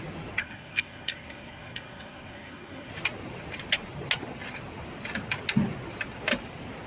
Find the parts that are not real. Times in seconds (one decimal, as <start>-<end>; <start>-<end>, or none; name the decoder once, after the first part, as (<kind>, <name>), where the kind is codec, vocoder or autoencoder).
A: 0.4-2.9 (codec, SNAC)